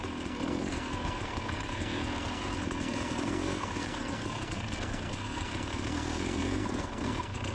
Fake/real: fake